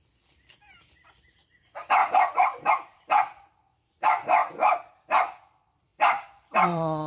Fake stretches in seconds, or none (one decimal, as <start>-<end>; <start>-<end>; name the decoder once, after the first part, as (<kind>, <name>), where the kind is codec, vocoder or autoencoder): 0.0-2.0 (vocoder, BigVGAN v2); 2.7-4.4; 4.9-7.1